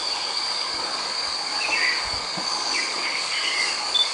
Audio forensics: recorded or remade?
remade